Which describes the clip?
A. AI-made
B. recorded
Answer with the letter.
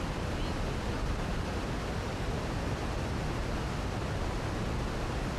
B